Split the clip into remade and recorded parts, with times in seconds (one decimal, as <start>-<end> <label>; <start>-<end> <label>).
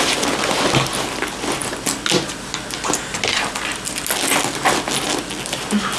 0.0-6.0 recorded